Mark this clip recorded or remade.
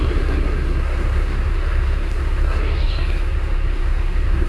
remade